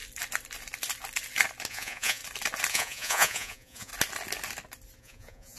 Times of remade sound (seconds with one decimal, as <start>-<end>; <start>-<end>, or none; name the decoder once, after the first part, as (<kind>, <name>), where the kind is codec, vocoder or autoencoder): 1.7-2.2 (vocoder, Vocos); 2.7-3.9; 5.0-5.6